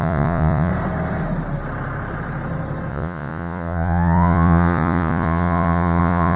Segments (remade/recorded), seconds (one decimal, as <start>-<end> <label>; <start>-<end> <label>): 0.0-0.7 remade; 0.7-2.9 recorded; 2.9-6.4 remade